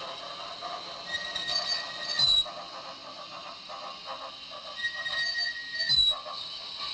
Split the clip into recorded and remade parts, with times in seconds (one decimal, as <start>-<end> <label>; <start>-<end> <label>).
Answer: 0.0-6.9 recorded